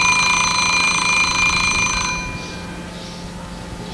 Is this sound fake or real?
real